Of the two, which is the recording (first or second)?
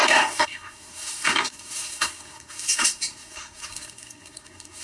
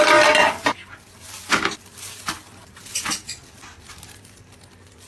second